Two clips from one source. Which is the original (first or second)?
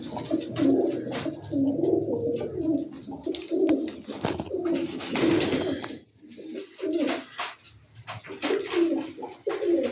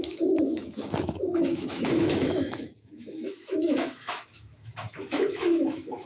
first